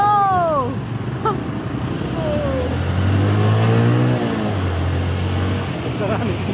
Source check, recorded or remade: recorded